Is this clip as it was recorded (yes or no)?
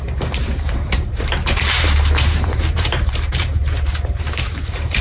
no